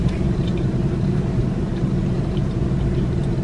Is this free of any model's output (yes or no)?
no